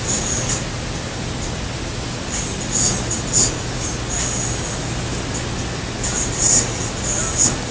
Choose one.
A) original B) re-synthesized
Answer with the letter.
A